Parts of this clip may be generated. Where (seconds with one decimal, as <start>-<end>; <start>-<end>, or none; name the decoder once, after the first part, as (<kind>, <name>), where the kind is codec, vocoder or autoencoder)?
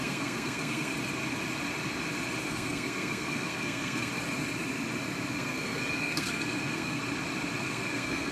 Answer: 0.0-0.9 (codec, SNAC); 2.4-4.1; 5.3-7.0; 7.6-8.3